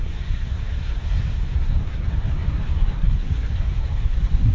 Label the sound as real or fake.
fake